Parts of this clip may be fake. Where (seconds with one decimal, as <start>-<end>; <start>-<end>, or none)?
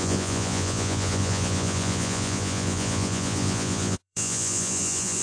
0.0-5.2